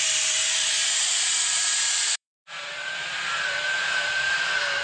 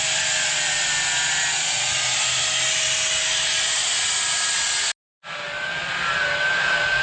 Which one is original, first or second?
second